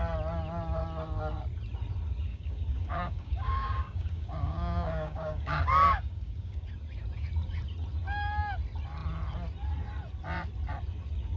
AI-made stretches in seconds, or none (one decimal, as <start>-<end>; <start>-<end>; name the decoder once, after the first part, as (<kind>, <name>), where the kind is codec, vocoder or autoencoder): 2.3-6.7 (codec, DAC)